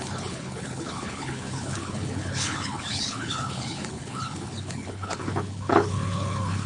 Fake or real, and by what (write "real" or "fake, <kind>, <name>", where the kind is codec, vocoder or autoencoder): fake, codec, HILCodec